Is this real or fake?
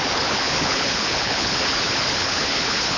fake